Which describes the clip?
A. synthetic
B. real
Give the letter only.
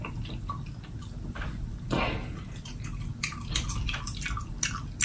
B